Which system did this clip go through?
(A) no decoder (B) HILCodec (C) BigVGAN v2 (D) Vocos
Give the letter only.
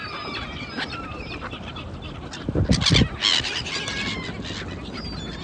A